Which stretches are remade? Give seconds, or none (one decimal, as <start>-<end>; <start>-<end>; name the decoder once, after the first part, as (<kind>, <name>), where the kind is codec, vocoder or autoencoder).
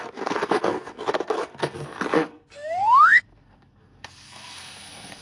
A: 0.0-5.2 (codec, SNAC)